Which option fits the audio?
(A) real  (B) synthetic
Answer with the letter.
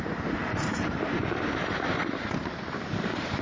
B